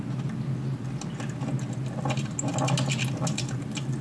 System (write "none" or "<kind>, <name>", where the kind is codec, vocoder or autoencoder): none